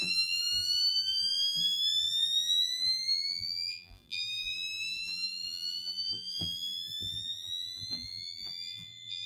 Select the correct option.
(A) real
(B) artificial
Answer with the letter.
B